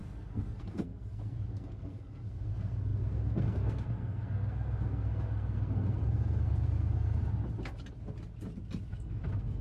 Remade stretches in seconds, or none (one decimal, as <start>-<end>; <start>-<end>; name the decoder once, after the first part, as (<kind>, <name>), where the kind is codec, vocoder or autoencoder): 0.0-7.2 (codec, SNAC); 8.9-9.6